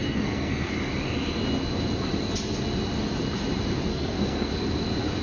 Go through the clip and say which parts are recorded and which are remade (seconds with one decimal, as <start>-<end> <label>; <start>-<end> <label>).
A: 0.0-0.7 remade; 0.7-3.9 recorded; 3.9-4.5 remade; 4.5-5.2 recorded